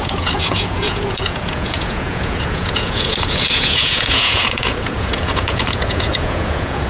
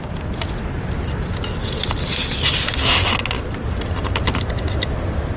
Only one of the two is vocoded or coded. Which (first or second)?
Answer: first